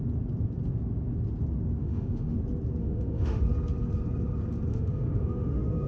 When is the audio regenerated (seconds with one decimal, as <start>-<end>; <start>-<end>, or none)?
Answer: 1.8-2.4; 2.8-3.4; 4.7-5.9